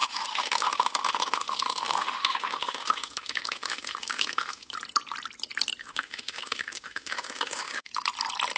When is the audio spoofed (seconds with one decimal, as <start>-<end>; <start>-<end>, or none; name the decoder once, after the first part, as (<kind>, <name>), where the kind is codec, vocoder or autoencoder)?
0.0-4.7 (autoencoder, DAC-VAE); 5.8-7.9